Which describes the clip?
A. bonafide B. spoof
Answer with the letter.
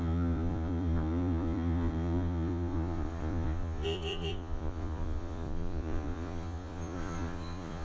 B